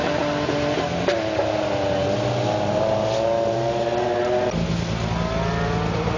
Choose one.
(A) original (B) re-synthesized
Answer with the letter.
A